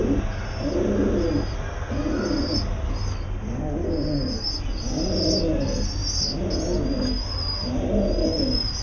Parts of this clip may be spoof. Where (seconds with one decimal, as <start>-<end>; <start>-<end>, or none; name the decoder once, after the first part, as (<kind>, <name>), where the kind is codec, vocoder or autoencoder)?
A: none